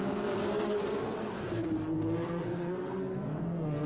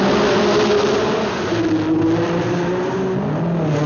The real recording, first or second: second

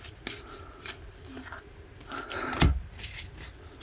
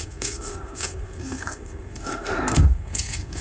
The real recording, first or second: first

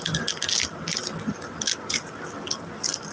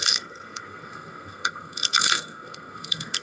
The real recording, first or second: first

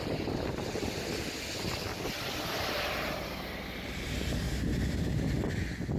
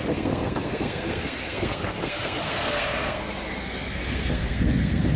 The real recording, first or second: first